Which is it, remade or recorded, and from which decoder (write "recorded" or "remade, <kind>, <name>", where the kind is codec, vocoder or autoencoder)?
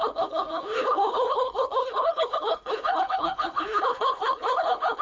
remade, codec, HILCodec